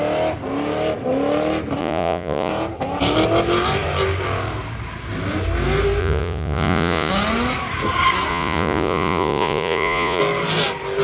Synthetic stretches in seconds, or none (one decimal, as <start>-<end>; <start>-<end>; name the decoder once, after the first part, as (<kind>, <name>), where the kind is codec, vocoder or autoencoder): 1.8-2.5 (vocoder, Vocos); 6.0-7.1; 8.3-10.2